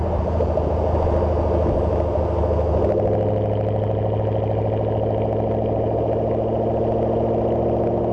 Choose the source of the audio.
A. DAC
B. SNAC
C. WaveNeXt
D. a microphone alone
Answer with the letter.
D